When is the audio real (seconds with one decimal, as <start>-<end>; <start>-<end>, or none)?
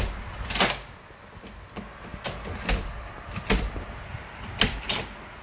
0.0-5.4